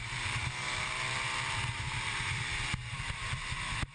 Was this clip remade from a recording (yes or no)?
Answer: yes